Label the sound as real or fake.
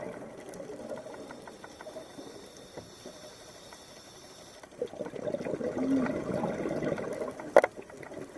real